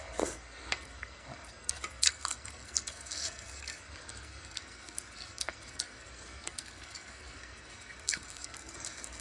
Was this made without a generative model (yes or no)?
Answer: no